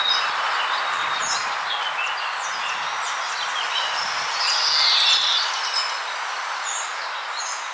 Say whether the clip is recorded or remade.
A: recorded